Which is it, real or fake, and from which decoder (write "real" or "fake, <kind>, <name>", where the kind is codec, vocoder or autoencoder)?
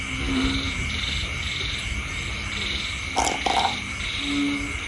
real